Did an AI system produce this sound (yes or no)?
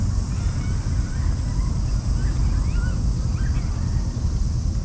no